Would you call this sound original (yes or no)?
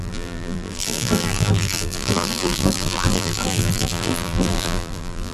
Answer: no